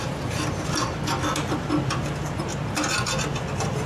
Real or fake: real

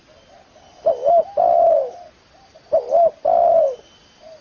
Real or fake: real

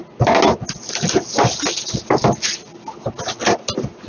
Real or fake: real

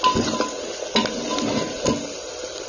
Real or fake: real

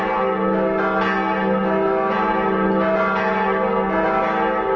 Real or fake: real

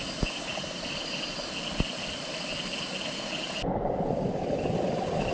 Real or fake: real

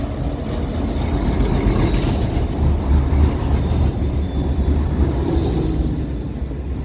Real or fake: real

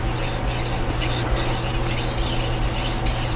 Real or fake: real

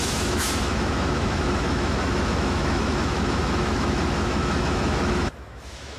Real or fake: fake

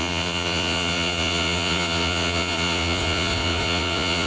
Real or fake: fake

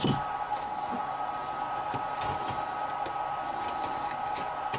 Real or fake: real